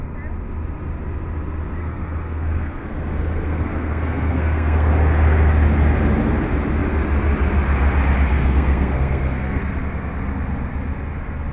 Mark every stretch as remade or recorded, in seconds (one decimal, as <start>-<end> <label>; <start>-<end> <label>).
0.0-1.8 recorded; 1.8-4.9 remade; 4.9-8.3 recorded; 8.3-9.6 remade; 9.6-11.5 recorded